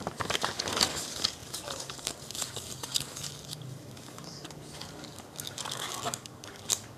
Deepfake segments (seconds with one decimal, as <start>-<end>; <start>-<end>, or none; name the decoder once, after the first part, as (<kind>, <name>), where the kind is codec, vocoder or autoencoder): 0.0-7.0 (codec, DAC)